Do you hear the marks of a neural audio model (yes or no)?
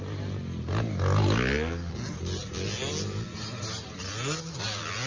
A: no